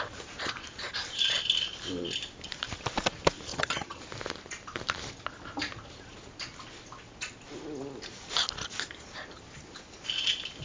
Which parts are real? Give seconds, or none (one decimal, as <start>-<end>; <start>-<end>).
0.0-3.5; 4.0-10.6